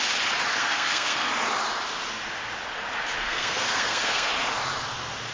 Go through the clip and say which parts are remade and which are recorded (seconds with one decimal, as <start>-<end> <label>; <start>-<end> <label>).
0.0-0.6 recorded; 0.6-1.3 remade; 1.3-3.2 recorded; 3.2-4.3 remade; 4.3-5.3 recorded